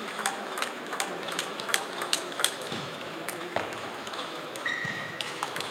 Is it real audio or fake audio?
fake